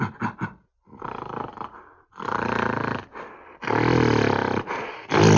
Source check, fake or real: real